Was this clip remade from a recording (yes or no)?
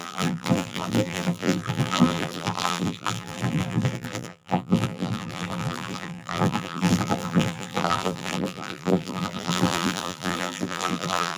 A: yes